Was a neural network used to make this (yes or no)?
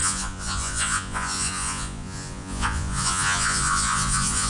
yes